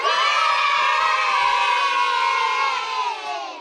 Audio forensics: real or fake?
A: real